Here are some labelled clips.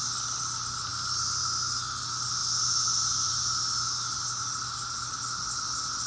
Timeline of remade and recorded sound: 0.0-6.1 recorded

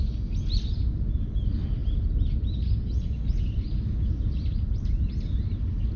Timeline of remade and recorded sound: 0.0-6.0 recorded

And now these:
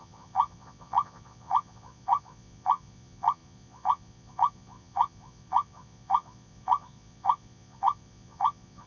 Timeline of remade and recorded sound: 0.0-8.9 remade

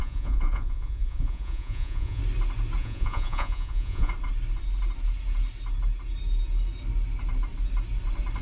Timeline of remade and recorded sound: 0.0-2.2 remade; 2.2-2.8 recorded; 2.8-4.1 remade; 4.1-8.4 recorded

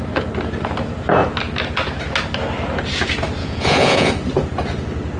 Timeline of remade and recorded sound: 0.0-3.4 recorded; 3.4-4.1 remade; 4.1-5.2 recorded

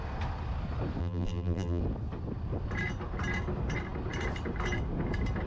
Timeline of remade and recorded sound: 0.0-1.0 recorded; 1.0-1.8 remade; 1.8-5.5 recorded

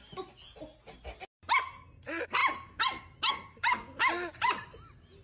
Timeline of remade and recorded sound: 0.0-5.2 recorded

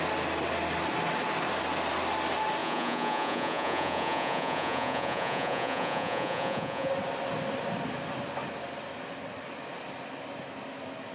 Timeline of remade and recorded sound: 0.0-2.6 recorded; 2.6-6.9 remade; 6.9-11.1 recorded